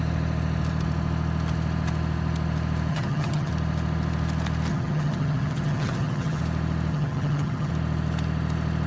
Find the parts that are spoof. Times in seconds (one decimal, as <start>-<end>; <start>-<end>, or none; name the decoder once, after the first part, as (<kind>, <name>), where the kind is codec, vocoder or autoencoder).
2.9-3.5 (vocoder, HiFi-GAN); 4.7-6.4; 6.9-7.7